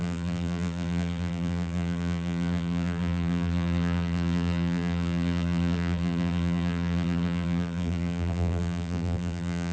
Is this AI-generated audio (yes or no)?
yes